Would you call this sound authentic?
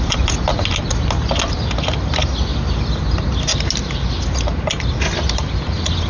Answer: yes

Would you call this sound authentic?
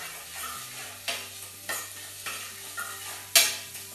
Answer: yes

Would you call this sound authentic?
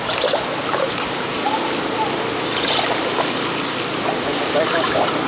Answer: yes